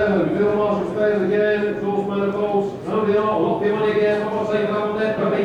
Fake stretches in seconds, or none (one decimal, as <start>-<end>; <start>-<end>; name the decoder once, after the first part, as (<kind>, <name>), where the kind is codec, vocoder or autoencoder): none